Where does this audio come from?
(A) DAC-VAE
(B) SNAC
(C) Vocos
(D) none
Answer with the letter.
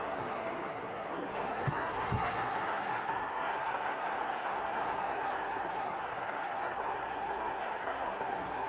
B